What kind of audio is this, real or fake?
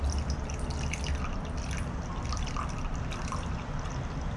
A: real